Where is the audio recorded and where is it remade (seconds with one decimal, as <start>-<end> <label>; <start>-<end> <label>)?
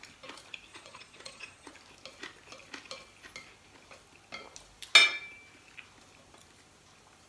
0.0-0.7 recorded; 0.7-1.7 remade; 1.7-7.3 recorded